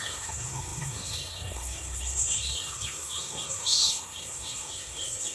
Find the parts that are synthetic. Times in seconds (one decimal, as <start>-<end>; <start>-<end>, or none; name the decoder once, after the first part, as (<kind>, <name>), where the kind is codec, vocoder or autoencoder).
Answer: 0.0-5.3 (codec, SNAC)